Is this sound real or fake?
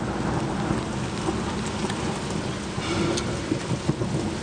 real